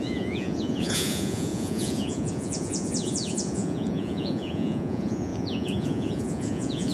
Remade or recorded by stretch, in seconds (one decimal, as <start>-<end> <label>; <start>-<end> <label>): 0.0-6.9 remade